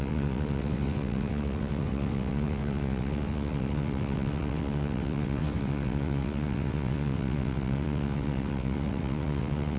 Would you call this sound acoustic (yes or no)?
no